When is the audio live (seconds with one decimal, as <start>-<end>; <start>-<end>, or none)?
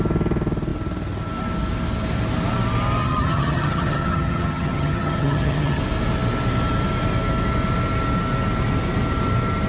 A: 0.0-3.0; 5.8-9.7